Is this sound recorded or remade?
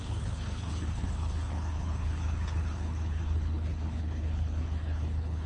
remade